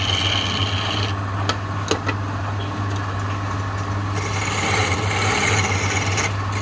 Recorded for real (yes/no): yes